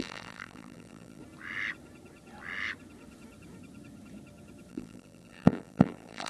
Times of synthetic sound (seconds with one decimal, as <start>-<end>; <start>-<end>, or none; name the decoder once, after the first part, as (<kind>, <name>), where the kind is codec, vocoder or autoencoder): 0.0-1.2 (vocoder, BigVGAN v2); 4.7-6.3